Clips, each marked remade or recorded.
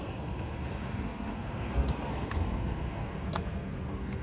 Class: remade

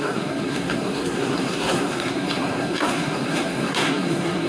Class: remade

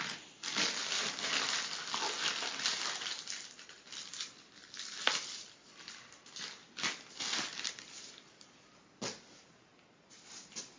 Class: recorded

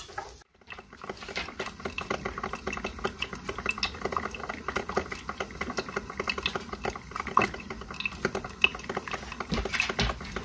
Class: recorded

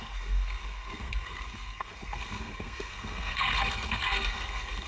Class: remade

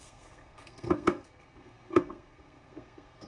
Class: remade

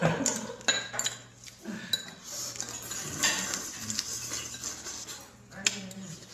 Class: recorded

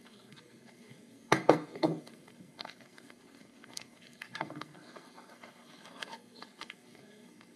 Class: remade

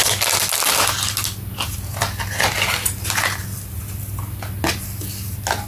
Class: recorded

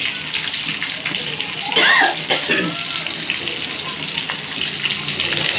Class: recorded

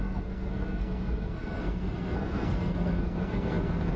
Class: remade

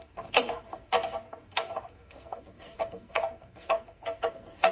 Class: remade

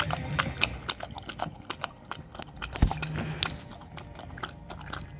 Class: recorded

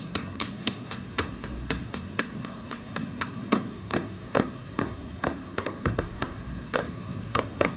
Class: remade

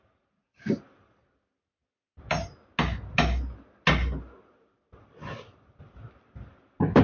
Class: recorded